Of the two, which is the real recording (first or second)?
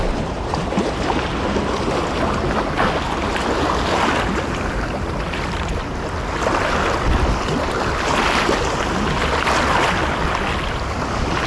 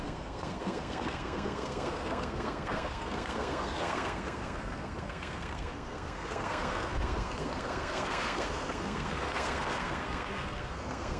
first